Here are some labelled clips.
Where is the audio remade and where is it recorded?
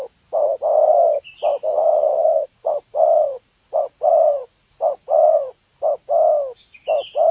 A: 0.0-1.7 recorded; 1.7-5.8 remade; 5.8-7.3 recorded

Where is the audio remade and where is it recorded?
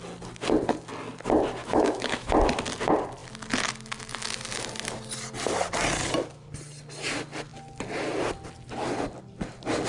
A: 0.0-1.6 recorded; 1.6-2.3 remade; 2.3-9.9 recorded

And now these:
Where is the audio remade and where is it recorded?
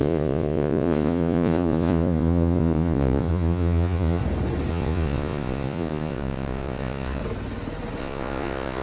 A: 0.0-4.2 remade; 4.2-4.7 recorded; 4.7-7.2 remade; 7.2-8.0 recorded; 8.0-8.8 remade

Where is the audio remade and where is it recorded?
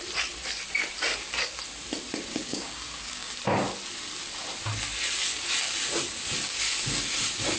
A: 0.0-2.3 recorded; 2.3-3.3 remade; 3.3-7.6 recorded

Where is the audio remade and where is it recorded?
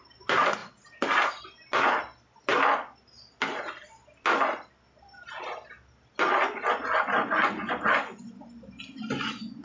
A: 0.0-9.6 recorded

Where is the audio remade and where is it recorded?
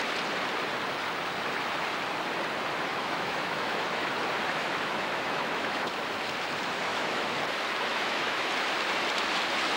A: 0.0-2.9 recorded; 2.9-4.1 remade; 4.1-4.6 recorded; 4.6-5.9 remade; 5.9-6.9 recorded; 6.9-7.4 remade; 7.4-7.9 recorded; 7.9-8.5 remade; 8.5-9.8 recorded